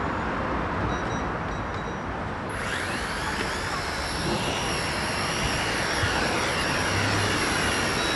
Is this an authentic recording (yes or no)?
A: yes